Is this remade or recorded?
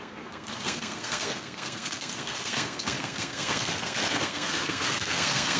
remade